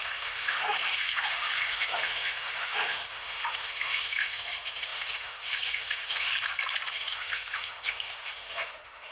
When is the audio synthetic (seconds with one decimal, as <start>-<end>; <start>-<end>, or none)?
0.0-6.3; 6.9-9.1